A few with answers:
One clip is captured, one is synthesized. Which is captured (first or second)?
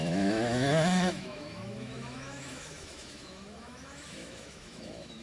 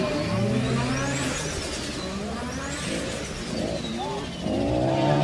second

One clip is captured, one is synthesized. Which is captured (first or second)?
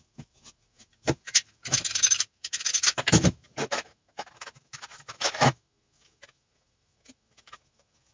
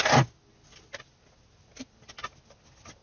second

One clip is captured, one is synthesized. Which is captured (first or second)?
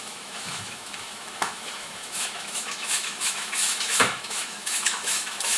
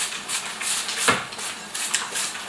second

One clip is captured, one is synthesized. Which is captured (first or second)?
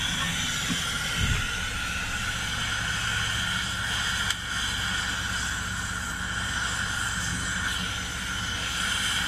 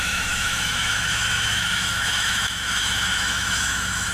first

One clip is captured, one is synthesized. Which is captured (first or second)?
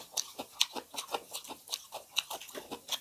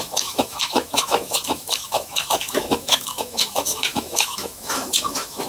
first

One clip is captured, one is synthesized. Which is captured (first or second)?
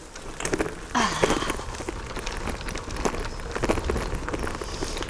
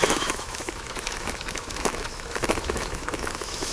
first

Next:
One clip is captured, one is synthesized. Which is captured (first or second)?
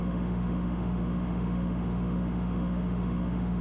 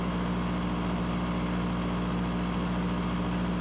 second